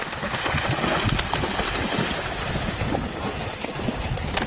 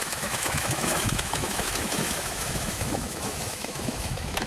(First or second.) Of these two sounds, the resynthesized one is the second